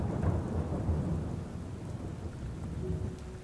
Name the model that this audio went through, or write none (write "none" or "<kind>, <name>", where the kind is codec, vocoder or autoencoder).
none